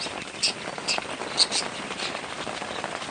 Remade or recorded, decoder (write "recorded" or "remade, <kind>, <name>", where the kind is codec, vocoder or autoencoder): recorded